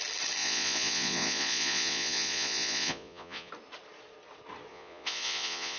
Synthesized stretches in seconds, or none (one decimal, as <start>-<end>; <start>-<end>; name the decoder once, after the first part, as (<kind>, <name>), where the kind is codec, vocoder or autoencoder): 0.4-3.5 (vocoder, Vocos); 4.7-5.8